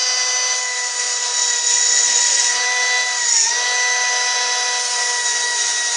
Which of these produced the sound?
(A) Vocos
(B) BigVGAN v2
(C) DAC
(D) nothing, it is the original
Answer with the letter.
D